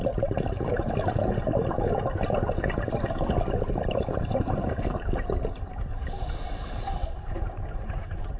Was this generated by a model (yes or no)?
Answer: no